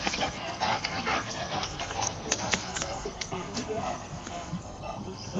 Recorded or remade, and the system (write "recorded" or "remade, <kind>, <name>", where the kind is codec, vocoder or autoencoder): remade, codec, SNAC